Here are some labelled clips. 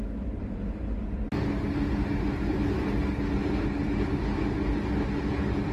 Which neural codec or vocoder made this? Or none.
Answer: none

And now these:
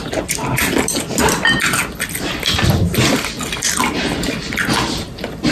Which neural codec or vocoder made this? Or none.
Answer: none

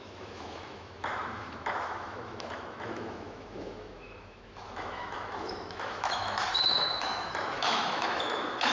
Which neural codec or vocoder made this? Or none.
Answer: autoencoder, DAC-VAE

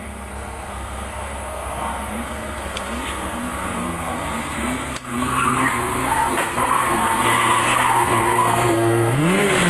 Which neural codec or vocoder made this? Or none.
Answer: codec, SNAC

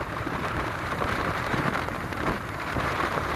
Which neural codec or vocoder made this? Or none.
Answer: vocoder, BigVGAN v2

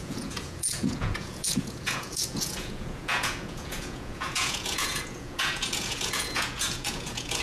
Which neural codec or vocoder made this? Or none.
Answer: vocoder, Vocos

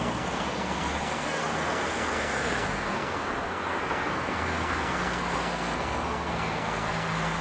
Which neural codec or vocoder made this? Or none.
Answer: codec, SNAC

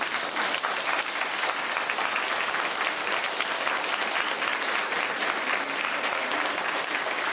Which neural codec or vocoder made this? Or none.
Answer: none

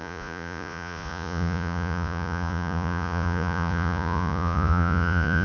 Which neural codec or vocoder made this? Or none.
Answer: vocoder, Vocos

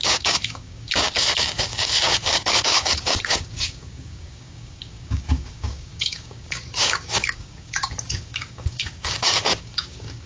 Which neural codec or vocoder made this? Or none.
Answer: codec, DAC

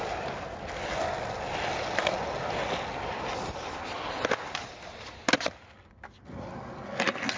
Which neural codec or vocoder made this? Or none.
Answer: none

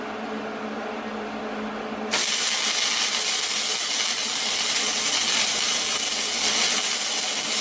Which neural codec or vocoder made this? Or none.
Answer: none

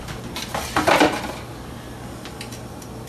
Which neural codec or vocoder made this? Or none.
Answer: none